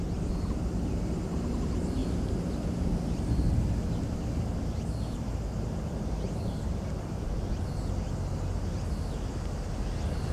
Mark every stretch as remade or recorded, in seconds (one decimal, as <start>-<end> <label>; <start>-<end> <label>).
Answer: 0.0-10.3 recorded

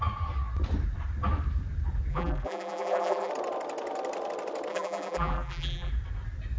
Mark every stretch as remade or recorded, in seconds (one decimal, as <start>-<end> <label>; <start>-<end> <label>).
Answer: 0.0-2.1 recorded; 2.1-3.3 remade; 3.3-4.7 recorded; 4.7-5.9 remade; 5.9-6.6 recorded